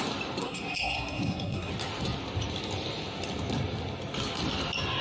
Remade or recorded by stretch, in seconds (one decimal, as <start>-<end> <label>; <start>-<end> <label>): 0.0-0.4 recorded; 0.4-1.7 remade; 1.7-5.0 recorded